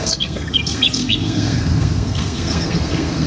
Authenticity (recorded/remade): remade